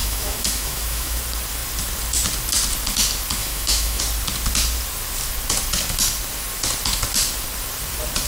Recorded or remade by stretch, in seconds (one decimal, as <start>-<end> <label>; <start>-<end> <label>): 0.0-1.2 remade; 1.2-3.4 recorded; 3.4-4.0 remade; 4.0-8.3 recorded